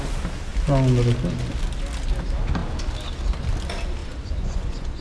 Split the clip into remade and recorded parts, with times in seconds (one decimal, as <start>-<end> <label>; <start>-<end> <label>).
0.0-4.0 recorded; 4.0-5.0 remade